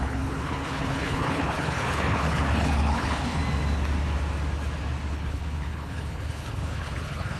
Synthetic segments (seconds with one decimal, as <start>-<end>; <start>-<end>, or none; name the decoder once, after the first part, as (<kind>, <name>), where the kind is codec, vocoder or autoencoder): 0.0-3.4 (codec, HILCodec); 5.1-7.4